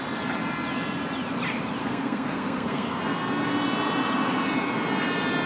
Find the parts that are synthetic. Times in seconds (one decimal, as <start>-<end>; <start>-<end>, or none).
1.8-3.0